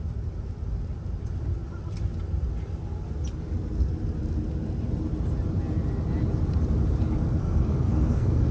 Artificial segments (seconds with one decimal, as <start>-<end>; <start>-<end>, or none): 7.4-8.5

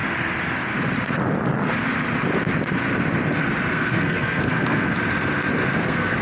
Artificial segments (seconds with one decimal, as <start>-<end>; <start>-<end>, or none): 3.7-5.0; 5.8-6.2